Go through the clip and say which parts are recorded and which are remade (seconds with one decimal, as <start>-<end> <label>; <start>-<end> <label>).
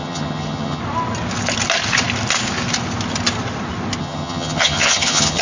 0.0-0.8 remade; 0.8-4.0 recorded; 4.0-5.4 remade